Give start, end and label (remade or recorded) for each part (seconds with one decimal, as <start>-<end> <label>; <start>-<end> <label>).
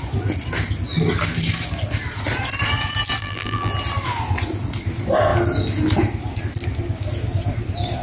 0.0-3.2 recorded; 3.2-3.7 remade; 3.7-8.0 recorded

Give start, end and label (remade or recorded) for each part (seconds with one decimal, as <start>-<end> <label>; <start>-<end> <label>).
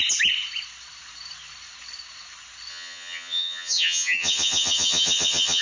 0.0-2.7 recorded; 2.7-5.6 remade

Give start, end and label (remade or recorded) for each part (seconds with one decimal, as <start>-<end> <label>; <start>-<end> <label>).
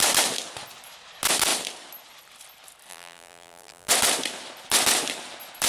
0.0-2.9 recorded; 2.9-3.9 remade; 3.9-5.7 recorded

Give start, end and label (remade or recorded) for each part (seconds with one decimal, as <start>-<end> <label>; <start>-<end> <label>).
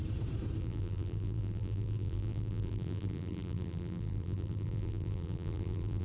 0.0-0.6 recorded; 0.6-6.0 remade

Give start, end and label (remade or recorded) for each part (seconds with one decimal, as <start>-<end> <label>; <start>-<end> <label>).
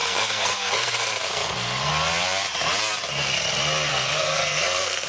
0.0-1.9 remade; 1.9-3.9 recorded; 3.9-5.1 remade